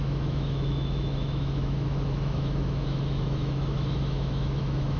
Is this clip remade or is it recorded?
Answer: remade